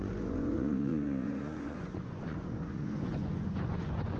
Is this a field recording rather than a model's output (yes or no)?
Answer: no